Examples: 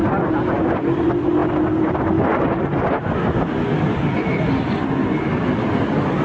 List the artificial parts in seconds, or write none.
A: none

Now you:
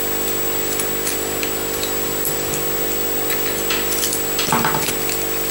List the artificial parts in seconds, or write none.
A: none

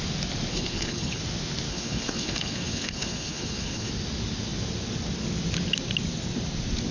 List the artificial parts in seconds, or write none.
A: 0.5-1.2; 1.7-3.9

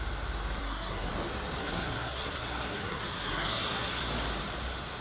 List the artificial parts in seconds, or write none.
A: 0.6-1.1; 1.6-4.0

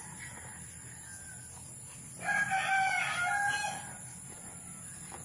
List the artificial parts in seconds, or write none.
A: 0.0-1.1; 4.2-5.2